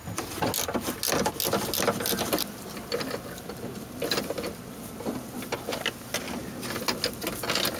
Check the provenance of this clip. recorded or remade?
recorded